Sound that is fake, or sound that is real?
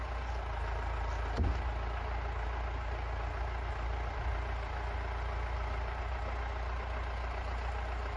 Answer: real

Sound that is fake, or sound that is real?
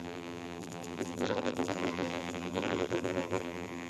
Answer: fake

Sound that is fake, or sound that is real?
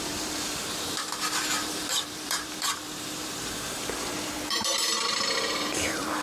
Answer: fake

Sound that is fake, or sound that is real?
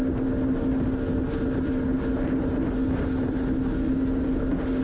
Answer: real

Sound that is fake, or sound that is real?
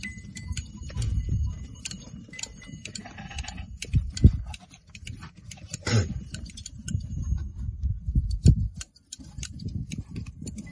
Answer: real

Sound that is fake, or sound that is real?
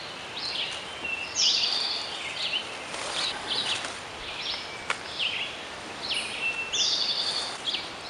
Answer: real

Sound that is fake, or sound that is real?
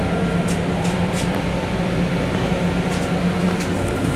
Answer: real